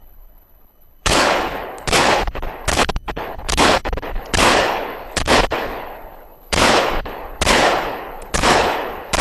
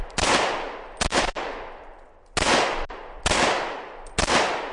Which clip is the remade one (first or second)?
first